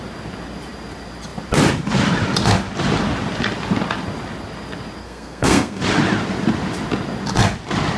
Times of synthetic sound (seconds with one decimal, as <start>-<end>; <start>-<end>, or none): 5.0-5.8